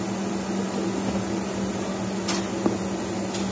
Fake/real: real